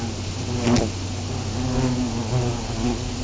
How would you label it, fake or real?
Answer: real